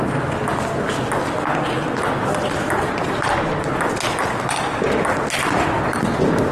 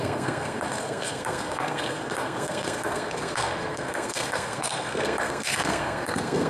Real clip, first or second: first